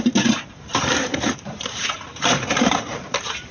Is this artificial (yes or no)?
yes